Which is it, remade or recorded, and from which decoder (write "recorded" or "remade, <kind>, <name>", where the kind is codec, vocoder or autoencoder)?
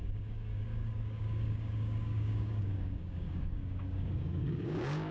remade, codec, DAC